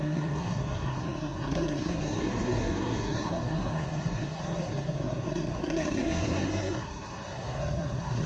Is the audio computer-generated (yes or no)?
yes